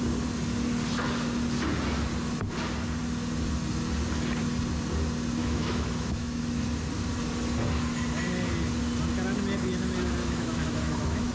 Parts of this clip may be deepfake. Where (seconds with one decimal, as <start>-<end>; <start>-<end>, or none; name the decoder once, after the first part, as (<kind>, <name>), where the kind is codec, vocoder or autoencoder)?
5.4-6.4 (autoencoder, DAC-VAE); 10.2-11.3